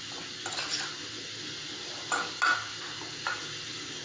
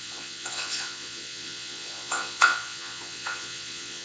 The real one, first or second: first